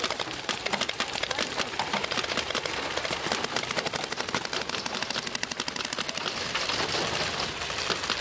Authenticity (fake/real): real